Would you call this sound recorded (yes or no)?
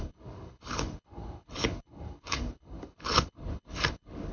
no